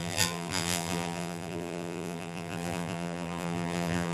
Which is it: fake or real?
fake